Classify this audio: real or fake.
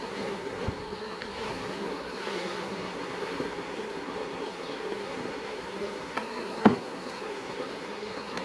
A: fake